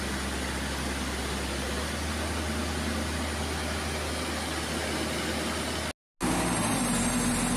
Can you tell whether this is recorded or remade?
recorded